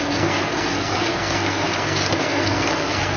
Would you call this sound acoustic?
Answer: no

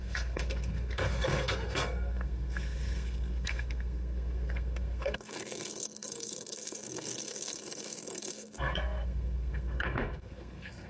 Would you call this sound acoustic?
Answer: no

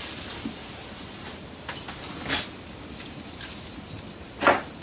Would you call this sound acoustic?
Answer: yes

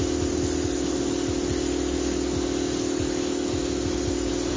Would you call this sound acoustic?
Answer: yes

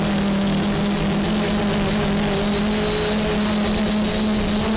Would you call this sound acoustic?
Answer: yes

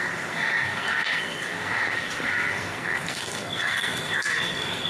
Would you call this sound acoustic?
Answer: no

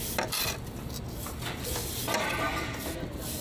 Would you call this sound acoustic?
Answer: yes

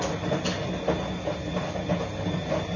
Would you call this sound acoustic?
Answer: yes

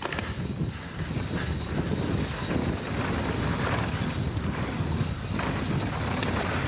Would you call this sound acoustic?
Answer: yes